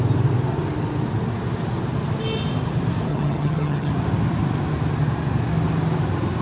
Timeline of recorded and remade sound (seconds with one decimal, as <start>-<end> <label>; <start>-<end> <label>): 0.0-3.1 recorded; 3.1-3.9 remade; 3.9-6.4 recorded